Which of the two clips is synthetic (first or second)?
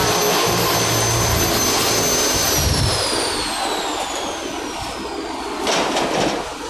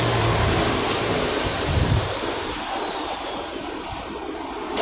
second